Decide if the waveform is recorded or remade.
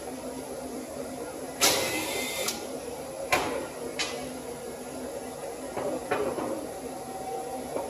remade